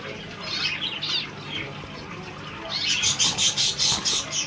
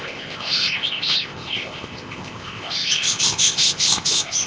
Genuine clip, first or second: first